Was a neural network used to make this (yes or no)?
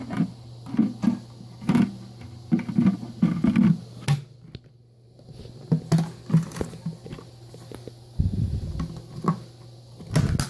no